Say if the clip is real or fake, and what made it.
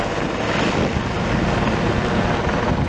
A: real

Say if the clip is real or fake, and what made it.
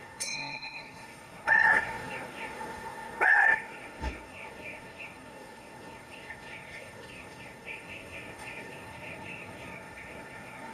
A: fake, codec, SNAC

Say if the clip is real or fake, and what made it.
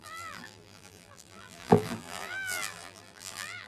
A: fake, vocoder, BigVGAN v2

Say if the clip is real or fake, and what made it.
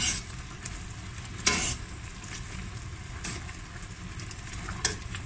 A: real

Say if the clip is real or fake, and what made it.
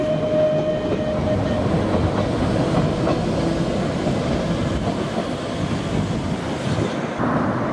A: real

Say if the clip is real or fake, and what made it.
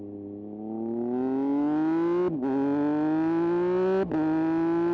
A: real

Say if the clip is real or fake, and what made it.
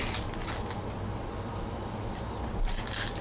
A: real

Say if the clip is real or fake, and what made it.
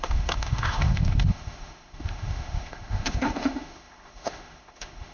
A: fake, autoencoder, DAC-VAE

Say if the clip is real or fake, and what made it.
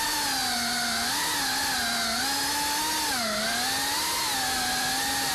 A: real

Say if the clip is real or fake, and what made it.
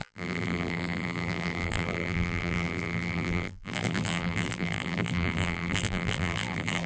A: fake, vocoder, BigVGAN v2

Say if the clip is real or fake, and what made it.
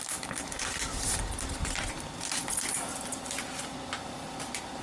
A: real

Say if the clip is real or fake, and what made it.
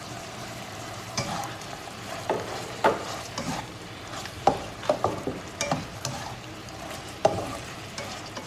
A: fake, vocoder, BigVGAN v2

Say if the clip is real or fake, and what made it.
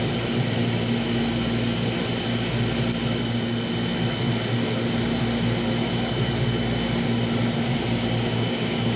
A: real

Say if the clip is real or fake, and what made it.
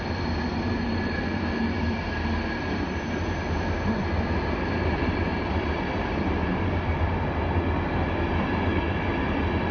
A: real